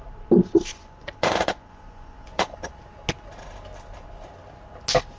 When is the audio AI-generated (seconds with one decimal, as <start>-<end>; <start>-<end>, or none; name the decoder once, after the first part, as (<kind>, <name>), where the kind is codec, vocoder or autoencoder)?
0.7-2.7 (vocoder, Vocos)